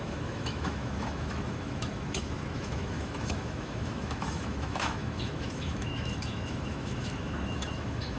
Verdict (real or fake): fake